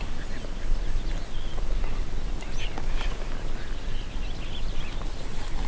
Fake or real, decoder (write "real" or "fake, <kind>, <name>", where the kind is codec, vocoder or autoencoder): real